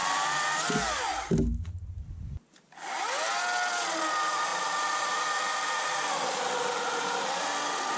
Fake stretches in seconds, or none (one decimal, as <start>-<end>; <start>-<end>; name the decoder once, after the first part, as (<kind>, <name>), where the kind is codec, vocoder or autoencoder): none